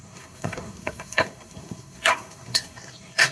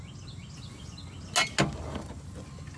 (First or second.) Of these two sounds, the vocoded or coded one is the first